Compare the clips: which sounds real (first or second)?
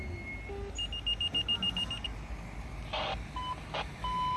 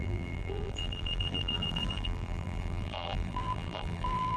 first